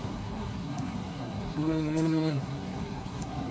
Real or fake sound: fake